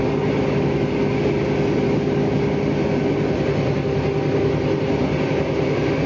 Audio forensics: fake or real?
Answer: real